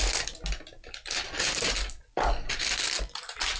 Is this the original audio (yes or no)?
yes